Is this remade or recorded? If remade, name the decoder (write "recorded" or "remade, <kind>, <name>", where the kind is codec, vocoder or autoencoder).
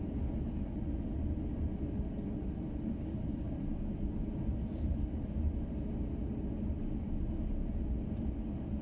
recorded